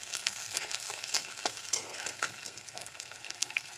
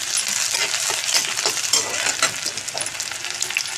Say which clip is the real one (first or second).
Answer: second